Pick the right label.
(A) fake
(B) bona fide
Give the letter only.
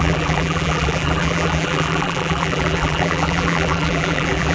A